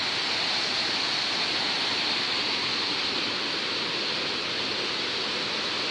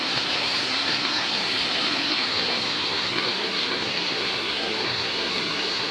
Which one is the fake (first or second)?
second